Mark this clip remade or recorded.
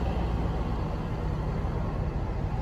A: recorded